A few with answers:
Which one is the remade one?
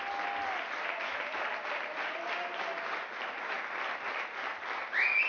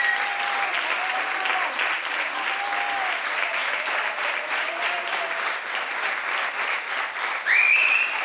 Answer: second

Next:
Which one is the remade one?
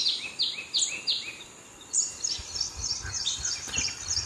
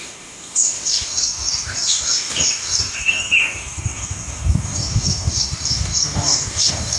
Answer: second